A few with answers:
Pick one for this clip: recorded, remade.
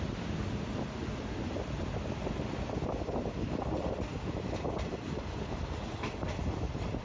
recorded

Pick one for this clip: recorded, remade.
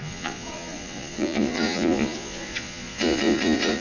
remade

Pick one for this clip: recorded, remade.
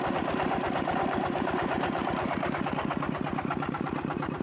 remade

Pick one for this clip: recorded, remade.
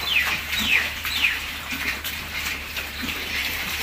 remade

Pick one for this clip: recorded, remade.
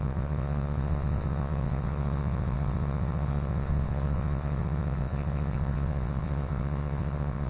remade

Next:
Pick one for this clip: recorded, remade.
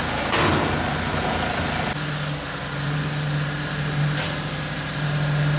recorded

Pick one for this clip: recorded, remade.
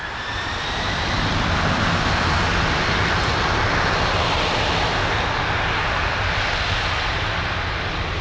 recorded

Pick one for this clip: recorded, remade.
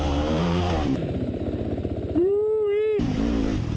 remade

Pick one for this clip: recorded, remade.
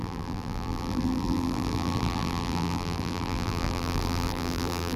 remade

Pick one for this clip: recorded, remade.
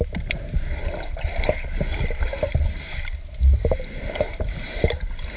recorded